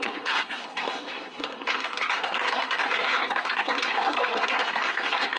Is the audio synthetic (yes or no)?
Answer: yes